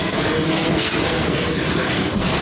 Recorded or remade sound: remade